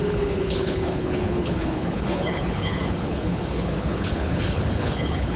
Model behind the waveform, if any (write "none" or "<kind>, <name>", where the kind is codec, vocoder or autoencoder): codec, HILCodec